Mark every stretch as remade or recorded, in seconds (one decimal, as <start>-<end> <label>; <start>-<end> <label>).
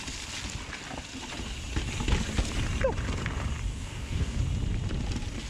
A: 0.0-3.7 recorded; 3.7-4.4 remade; 4.4-5.5 recorded